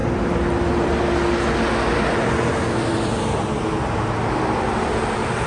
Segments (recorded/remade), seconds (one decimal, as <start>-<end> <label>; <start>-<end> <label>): 0.0-5.5 recorded